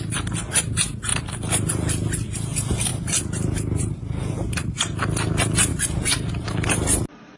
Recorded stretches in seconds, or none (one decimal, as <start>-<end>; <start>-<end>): 0.0-5.7; 6.3-7.4